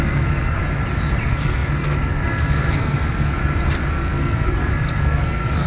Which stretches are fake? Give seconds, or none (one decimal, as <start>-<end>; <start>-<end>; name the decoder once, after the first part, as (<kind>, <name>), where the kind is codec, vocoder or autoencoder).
0.0-0.6 (codec, SNAC); 1.2-3.4; 3.9-5.7